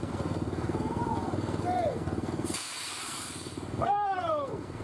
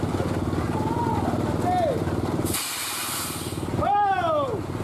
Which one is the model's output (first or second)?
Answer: first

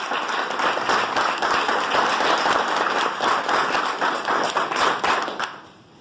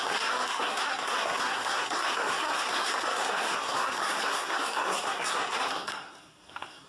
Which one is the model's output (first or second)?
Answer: second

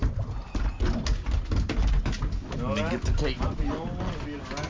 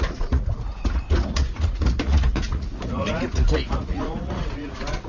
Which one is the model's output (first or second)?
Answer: second